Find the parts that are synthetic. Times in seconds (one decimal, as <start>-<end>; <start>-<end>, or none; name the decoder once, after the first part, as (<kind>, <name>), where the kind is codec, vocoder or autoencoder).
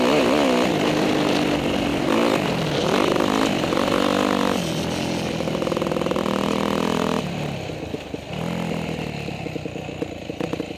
none